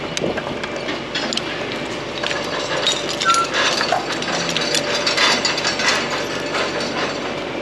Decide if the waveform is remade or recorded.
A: recorded